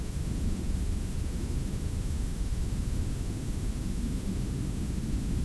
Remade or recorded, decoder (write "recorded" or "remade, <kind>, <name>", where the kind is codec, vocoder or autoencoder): remade, autoencoder, DAC-VAE